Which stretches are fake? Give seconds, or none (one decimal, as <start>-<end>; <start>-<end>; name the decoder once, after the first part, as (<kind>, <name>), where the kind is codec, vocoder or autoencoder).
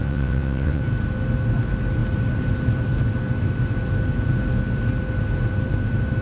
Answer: 0.0-0.8 (vocoder, WaveNeXt)